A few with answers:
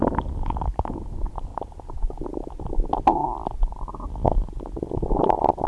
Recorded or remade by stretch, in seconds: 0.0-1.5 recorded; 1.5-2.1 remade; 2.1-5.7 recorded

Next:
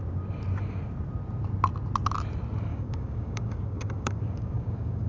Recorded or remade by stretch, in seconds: 0.0-2.7 recorded; 2.7-5.1 remade